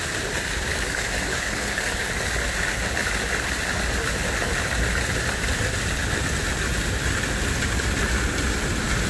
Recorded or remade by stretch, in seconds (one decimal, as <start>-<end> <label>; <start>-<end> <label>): 0.0-0.7 recorded; 0.7-2.1 remade; 2.1-9.1 recorded